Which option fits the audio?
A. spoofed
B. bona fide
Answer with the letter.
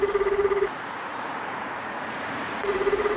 A